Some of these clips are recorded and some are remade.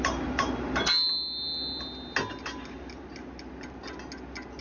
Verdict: recorded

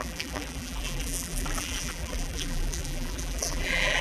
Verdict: remade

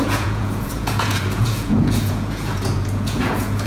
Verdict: remade